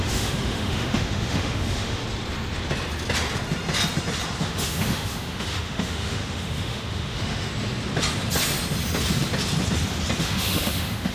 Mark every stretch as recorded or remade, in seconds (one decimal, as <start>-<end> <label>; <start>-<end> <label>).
0.0-2.0 remade; 2.0-4.4 recorded; 4.4-7.5 remade; 7.5-10.2 recorded; 10.2-11.1 remade